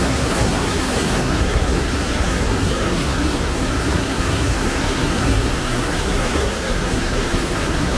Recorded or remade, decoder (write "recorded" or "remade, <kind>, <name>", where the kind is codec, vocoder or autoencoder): remade, codec, SNAC